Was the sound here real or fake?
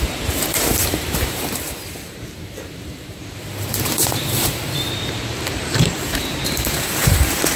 fake